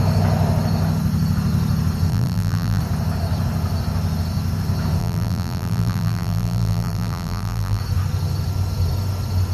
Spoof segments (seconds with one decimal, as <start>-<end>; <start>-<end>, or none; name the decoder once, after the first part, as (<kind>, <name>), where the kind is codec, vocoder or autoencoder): 2.1-2.8 (vocoder, BigVGAN v2); 5.0-7.8